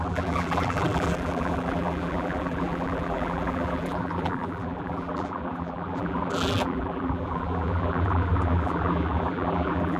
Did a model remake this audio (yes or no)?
yes